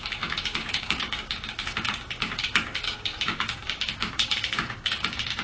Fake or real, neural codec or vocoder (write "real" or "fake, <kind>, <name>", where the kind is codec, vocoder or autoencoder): fake, codec, DAC